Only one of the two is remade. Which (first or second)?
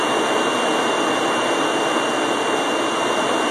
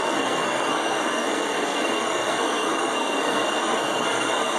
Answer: second